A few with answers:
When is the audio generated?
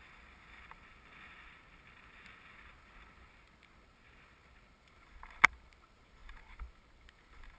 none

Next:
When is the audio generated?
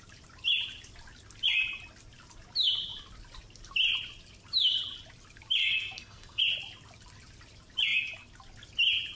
5.6-6.4 (codec, SNAC)